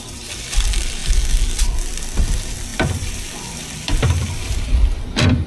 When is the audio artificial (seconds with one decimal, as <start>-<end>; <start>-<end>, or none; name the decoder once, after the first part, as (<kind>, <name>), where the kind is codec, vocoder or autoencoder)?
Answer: 0.0-1.0 (vocoder, BigVGAN v2); 1.6-5.5